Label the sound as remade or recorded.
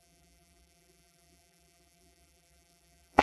remade